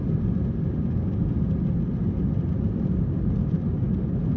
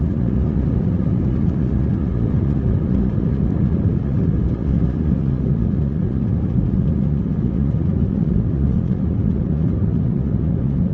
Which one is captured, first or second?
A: first